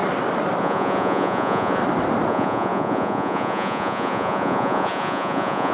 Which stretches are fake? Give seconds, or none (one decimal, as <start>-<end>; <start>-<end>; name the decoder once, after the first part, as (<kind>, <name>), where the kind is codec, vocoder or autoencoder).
0.6-1.8 (vocoder, Vocos); 2.3-5.7